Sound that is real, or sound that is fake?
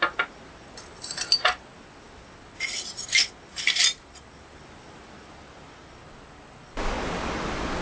real